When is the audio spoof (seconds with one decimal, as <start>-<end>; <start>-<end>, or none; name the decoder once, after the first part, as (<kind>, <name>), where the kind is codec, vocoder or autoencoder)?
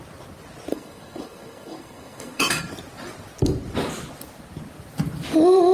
0.7-2.6 (codec, SNAC)